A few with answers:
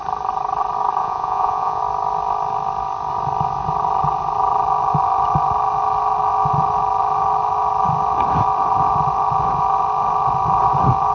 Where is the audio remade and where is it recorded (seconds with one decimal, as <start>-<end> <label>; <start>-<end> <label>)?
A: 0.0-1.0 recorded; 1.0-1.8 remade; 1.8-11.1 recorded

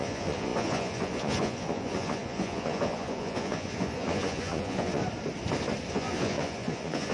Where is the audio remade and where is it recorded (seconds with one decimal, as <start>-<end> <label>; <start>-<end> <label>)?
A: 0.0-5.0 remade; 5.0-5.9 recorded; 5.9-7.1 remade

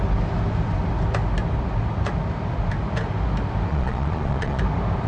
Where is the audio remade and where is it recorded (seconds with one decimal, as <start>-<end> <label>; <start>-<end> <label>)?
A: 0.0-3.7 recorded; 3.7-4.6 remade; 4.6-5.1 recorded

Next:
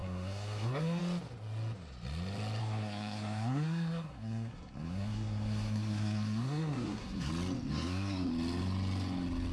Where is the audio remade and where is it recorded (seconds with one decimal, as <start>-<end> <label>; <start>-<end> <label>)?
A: 0.0-1.0 remade; 1.0-2.6 recorded; 2.6-7.3 remade; 7.3-7.7 recorded; 7.7-8.3 remade; 8.3-9.5 recorded

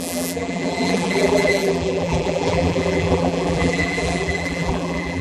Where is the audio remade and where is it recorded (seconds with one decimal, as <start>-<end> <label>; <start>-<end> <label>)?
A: 0.0-5.2 remade

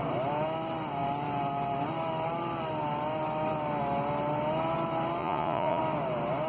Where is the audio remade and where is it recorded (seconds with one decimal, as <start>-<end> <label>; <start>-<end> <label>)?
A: 0.0-5.2 recorded; 5.2-5.8 remade; 5.8-6.5 recorded